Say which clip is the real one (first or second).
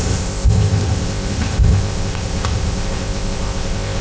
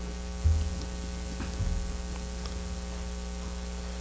second